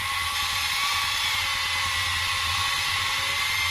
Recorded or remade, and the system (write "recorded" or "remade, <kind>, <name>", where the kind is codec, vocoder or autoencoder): recorded